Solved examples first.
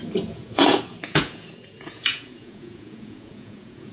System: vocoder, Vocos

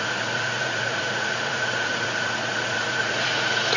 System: vocoder, Vocos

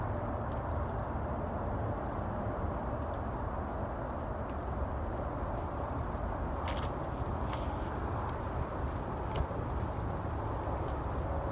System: none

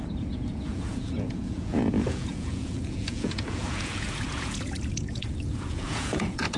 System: vocoder, Vocos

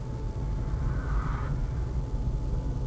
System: none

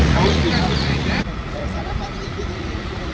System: vocoder, Vocos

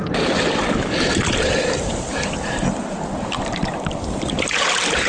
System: none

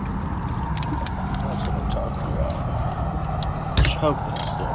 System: none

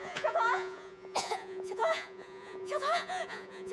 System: vocoder, Vocos